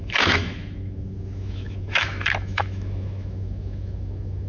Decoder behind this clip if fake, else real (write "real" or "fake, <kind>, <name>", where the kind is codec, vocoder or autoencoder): fake, autoencoder, DAC-VAE